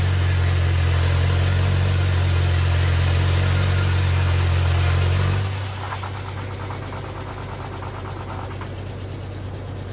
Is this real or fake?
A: real